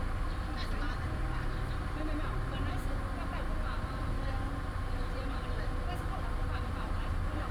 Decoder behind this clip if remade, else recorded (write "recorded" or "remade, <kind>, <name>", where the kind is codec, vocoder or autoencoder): recorded